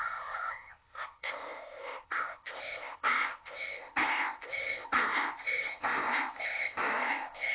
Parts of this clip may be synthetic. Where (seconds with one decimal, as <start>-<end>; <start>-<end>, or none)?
0.0-7.5